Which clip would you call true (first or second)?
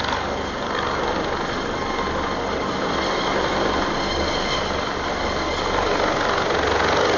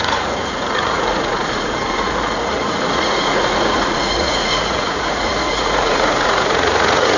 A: first